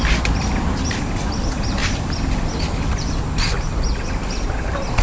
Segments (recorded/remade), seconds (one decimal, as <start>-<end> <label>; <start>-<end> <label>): 0.0-5.0 remade